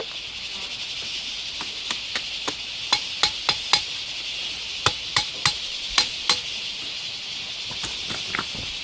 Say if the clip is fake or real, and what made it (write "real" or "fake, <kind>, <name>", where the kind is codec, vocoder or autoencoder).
real